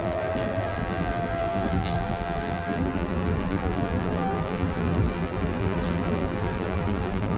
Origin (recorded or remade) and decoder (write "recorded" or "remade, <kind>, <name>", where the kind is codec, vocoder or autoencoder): remade, vocoder, BigVGAN v2